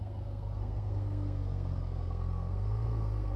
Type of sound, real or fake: fake